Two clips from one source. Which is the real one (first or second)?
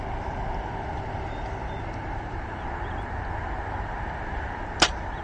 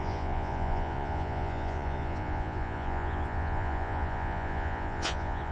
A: first